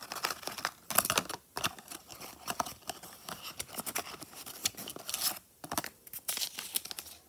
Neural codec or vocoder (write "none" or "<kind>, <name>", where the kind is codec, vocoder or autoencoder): none